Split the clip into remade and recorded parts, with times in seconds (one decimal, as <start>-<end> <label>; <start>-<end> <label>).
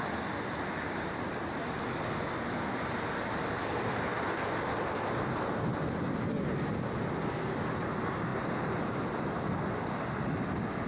0.0-8.3 recorded; 8.3-9.2 remade; 9.2-10.9 recorded